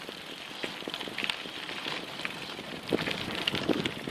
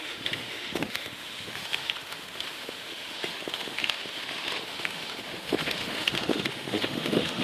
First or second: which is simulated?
second